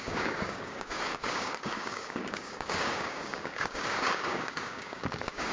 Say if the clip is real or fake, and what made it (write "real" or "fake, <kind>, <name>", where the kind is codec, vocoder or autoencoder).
fake, codec, DAC